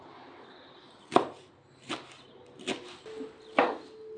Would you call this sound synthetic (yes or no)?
no